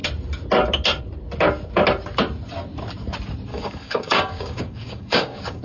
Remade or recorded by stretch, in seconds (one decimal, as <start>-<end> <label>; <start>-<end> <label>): 0.0-3.5 recorded; 3.5-5.6 remade